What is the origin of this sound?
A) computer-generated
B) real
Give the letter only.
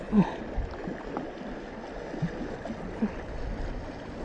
B